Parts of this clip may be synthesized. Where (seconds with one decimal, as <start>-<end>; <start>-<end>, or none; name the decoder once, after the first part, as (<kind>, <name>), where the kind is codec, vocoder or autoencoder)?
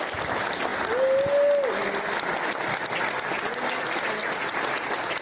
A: 4.2-4.8 (vocoder, Vocos)